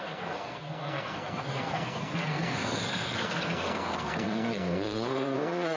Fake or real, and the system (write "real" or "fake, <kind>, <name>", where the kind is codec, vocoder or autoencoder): fake, codec, SNAC